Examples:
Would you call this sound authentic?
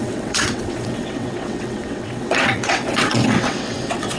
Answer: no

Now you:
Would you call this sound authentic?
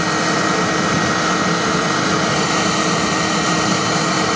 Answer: yes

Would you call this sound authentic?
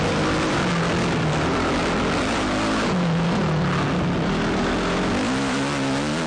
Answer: yes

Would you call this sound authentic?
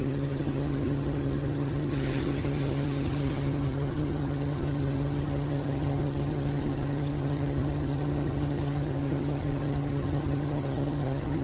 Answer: no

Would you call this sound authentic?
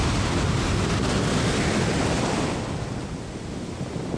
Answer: yes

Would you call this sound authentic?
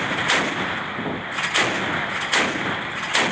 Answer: yes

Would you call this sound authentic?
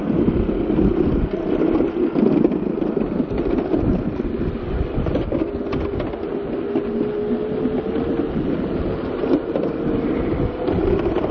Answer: yes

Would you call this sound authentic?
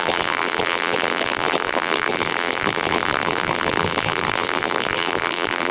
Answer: no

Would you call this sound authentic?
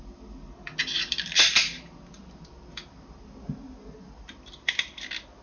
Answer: yes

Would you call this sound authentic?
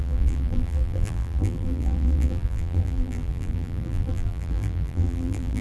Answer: no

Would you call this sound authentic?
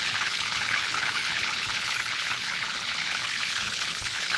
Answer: no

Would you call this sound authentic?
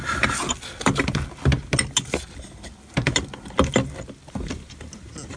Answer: yes